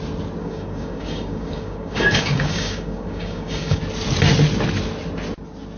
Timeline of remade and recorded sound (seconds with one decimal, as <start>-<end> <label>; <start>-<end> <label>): 0.0-0.4 recorded; 0.4-3.8 remade; 3.8-5.8 recorded